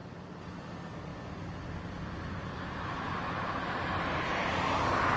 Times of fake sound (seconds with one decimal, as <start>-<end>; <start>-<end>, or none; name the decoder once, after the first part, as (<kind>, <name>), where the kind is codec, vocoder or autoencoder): none